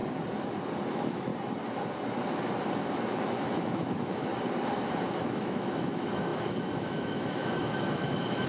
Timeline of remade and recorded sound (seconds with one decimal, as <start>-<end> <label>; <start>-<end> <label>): 0.0-0.9 recorded; 0.9-1.3 remade; 1.3-2.9 recorded; 2.9-4.3 remade; 4.3-5.0 recorded; 5.0-8.5 remade